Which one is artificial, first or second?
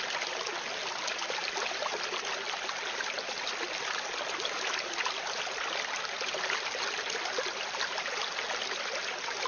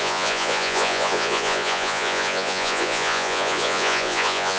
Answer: second